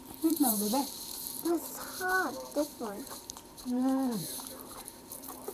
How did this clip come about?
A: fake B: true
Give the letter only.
A